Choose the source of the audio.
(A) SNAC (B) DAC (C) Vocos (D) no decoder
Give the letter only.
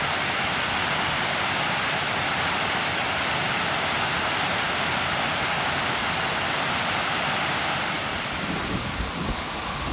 D